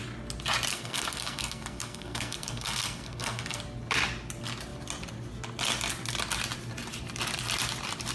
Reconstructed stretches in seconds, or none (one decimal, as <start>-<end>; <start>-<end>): 0.7-3.6